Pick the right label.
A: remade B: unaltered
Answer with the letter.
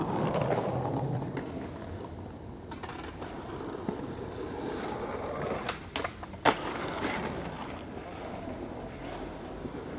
B